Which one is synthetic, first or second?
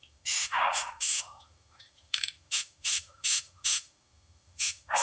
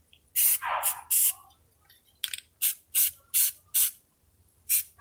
first